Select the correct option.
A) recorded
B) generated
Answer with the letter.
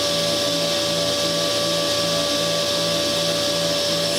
A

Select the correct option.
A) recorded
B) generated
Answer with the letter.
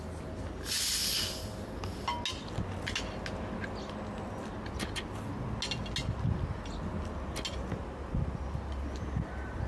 A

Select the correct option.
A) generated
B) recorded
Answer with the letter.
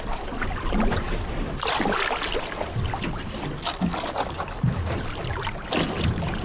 B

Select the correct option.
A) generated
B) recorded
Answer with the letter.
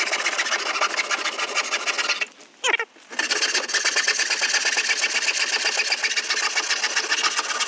B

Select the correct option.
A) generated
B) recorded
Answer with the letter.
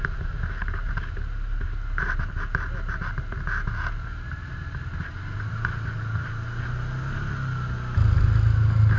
B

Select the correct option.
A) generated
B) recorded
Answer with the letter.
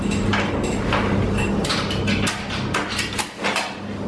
B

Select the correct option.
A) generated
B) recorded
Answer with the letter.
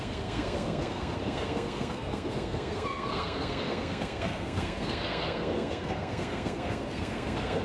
A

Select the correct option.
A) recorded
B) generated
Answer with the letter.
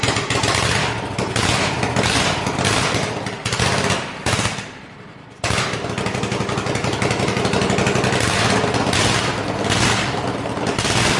A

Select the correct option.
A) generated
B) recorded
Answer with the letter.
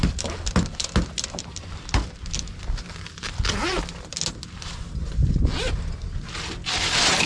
B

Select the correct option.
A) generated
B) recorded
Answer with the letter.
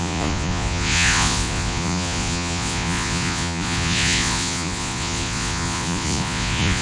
A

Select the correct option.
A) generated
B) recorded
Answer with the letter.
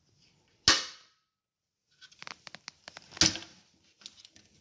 B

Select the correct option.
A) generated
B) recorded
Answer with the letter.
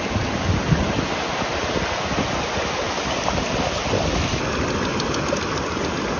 B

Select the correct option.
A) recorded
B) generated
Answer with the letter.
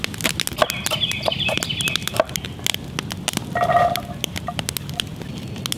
A